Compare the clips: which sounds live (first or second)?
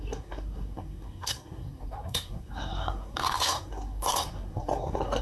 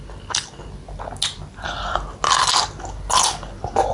second